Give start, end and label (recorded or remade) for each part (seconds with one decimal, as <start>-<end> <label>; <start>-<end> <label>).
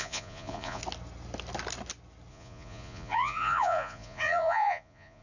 0.0-0.8 remade; 0.8-2.3 recorded; 2.3-5.2 remade